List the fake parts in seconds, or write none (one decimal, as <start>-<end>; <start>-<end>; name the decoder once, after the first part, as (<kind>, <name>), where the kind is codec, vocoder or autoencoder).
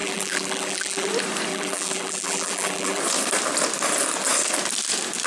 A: 0.0-1.1 (vocoder, BigVGAN v2); 1.5-3.0